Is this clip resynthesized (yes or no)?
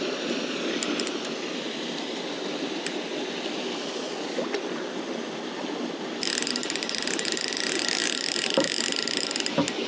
no